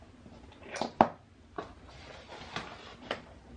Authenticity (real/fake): real